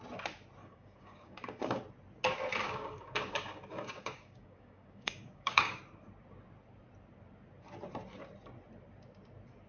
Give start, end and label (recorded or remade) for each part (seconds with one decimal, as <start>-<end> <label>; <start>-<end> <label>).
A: 0.0-0.6 recorded; 0.6-1.8 remade; 1.8-2.6 recorded; 2.6-5.8 remade; 5.8-9.7 recorded

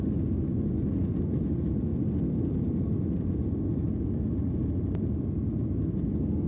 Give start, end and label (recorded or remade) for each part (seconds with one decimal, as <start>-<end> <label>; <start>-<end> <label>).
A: 0.0-6.5 recorded

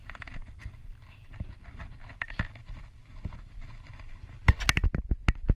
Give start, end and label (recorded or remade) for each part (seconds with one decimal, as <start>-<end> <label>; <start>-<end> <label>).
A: 0.0-0.8 remade; 0.8-5.5 recorded

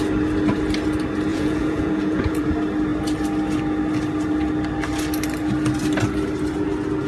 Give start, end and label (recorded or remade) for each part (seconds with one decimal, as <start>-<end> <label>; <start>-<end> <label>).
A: 0.0-1.3 recorded; 1.3-2.5 remade; 2.5-7.1 recorded

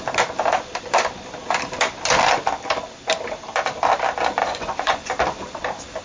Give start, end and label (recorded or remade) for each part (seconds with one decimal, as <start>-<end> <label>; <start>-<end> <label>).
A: 0.0-4.4 recorded; 4.4-5.1 remade; 5.1-6.0 recorded